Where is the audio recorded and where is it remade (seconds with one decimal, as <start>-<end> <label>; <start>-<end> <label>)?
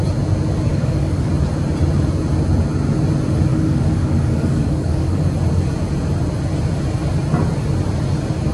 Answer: 0.0-0.7 recorded; 0.7-1.3 remade; 1.3-3.5 recorded; 3.5-5.3 remade; 5.3-8.5 recorded